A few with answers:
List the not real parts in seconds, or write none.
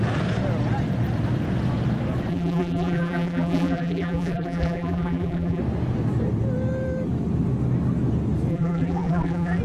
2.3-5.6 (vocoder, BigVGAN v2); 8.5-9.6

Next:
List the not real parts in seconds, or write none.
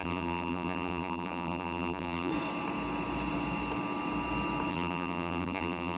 0.0-2.3 (vocoder, BigVGAN v2); 4.7-6.0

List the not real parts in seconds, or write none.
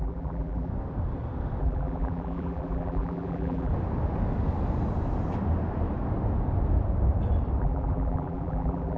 0.0-0.7 (vocoder, BigVGAN v2); 1.6-3.7; 7.6-9.0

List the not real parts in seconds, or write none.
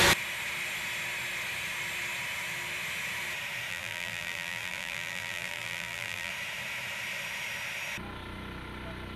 3.7-6.3 (vocoder, BigVGAN v2)